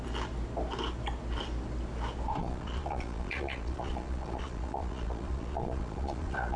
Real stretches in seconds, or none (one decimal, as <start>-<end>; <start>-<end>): 0.0-2.4